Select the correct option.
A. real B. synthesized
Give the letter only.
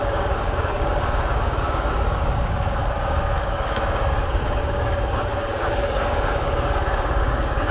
B